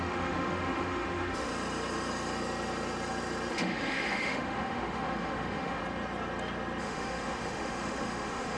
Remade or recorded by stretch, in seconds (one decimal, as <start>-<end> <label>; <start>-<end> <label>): 0.0-1.5 remade; 1.5-3.5 recorded; 3.5-5.8 remade; 5.8-6.8 recorded; 6.8-8.6 remade